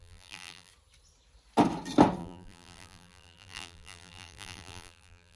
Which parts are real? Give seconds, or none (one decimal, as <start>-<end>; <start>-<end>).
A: 0.7-2.2